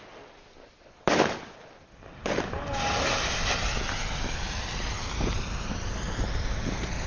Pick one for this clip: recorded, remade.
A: recorded